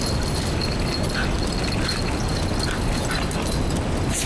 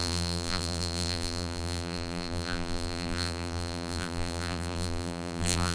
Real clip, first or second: first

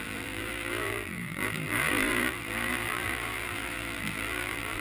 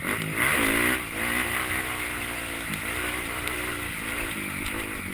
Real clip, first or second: second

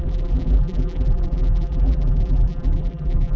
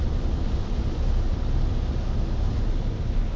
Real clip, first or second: second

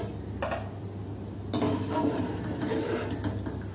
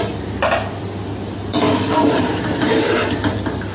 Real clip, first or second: first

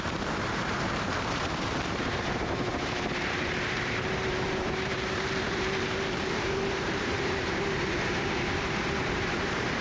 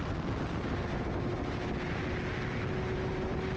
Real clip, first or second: second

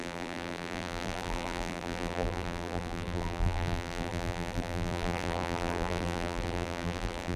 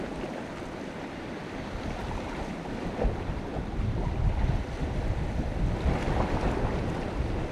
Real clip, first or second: second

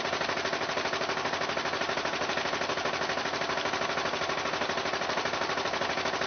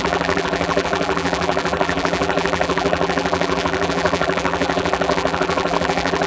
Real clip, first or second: first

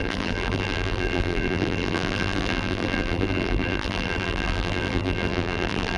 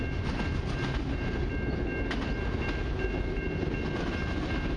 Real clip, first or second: second